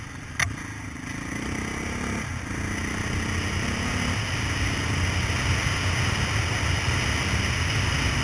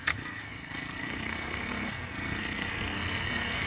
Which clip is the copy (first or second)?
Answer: second